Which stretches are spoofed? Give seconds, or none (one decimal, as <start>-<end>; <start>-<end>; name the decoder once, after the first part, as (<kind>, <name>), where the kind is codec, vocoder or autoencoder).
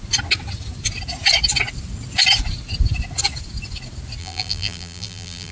4.2-5.5 (vocoder, BigVGAN v2)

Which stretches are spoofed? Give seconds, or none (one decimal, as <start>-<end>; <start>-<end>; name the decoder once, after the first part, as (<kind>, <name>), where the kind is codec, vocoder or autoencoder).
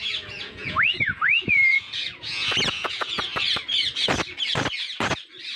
0.0-3.3 (vocoder, Vocos)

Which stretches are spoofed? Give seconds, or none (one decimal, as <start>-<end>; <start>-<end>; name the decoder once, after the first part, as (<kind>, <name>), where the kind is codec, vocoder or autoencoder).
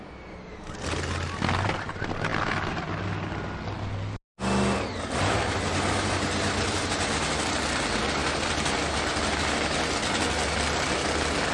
none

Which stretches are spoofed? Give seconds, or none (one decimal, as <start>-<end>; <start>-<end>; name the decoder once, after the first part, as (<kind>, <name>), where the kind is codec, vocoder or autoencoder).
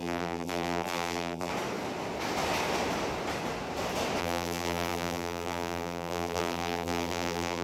0.0-1.5 (vocoder, BigVGAN v2); 4.2-7.6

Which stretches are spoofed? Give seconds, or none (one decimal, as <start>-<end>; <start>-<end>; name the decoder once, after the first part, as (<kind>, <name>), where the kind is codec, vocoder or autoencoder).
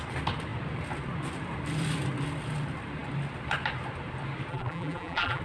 4.5-5.4 (vocoder, BigVGAN v2)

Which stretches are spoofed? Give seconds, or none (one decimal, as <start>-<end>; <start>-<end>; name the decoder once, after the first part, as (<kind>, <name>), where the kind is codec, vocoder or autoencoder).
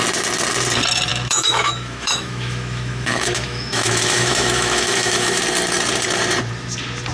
1.1-5.4 (autoencoder, DAC-VAE)